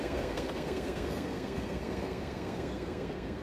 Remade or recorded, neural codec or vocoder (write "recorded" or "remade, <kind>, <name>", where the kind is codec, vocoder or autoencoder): remade, codec, SNAC